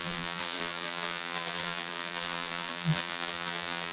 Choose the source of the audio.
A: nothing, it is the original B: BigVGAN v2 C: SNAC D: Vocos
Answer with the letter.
B